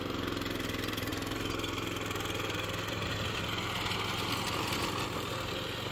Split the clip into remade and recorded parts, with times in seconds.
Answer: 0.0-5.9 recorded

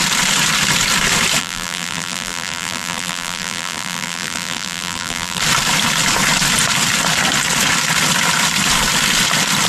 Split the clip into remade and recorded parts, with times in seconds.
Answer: 0.0-1.4 recorded; 1.4-5.4 remade; 5.4-9.7 recorded

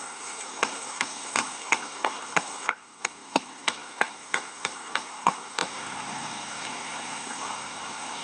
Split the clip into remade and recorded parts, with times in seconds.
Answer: 0.0-8.2 remade

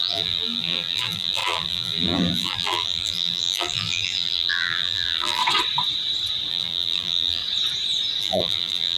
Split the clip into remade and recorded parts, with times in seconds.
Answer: 0.0-5.4 remade; 5.4-6.5 recorded; 6.5-7.4 remade; 7.4-8.2 recorded; 8.2-9.0 remade

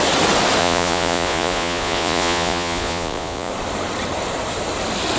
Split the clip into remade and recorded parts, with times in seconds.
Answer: 0.0-0.6 recorded; 0.6-3.5 remade; 3.5-5.2 recorded